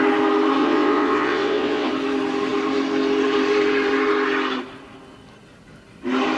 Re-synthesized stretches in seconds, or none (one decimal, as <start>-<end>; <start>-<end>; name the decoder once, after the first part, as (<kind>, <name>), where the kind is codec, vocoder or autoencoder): 0.6-1.9 (vocoder, WaveNeXt)